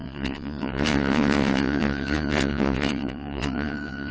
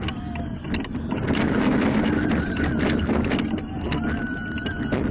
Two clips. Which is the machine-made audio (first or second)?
first